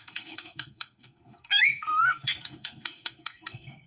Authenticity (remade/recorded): remade